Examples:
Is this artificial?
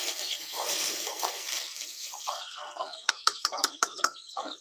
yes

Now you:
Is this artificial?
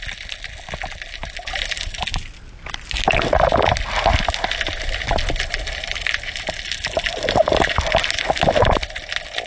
no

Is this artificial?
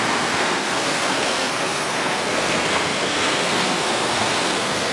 yes